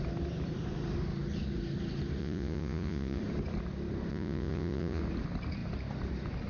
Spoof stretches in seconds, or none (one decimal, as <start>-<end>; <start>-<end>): 2.2-3.2; 4.1-5.0